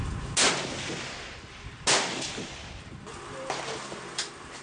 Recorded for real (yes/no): yes